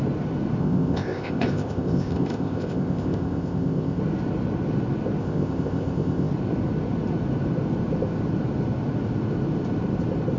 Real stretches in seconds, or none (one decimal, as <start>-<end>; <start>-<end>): 0.0-0.6; 4.0-5.2; 6.3-10.4